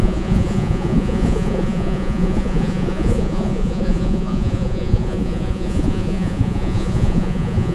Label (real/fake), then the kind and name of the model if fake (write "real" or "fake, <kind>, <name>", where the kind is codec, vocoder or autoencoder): fake, vocoder, Vocos